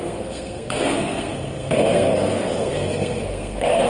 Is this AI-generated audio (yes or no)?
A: yes